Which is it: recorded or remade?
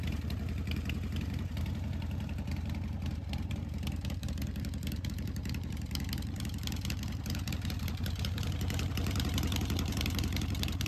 remade